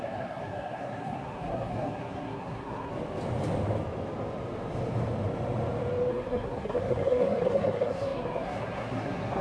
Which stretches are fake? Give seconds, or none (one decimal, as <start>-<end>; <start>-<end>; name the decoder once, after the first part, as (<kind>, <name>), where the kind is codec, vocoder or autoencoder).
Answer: 0.0-2.9 (codec, SNAC); 6.1-9.4

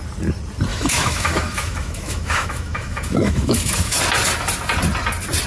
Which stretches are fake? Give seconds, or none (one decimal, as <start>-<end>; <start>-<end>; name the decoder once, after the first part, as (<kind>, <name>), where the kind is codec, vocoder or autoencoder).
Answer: 0.7-4.0 (autoencoder, DAC-VAE)

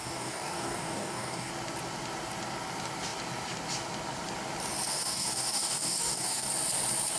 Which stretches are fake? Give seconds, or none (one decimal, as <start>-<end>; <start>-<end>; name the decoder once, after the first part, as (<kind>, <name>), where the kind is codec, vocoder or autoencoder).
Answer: 0.0-1.5 (codec, DAC); 4.9-6.5

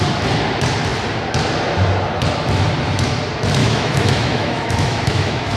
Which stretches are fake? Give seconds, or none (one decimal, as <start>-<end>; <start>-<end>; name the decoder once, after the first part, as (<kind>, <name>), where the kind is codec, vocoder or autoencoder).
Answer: 3.6-5.6 (autoencoder, DAC-VAE)

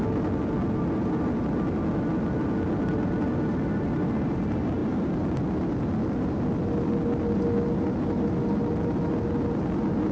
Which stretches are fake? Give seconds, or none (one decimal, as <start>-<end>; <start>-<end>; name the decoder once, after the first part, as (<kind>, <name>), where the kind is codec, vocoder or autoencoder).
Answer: none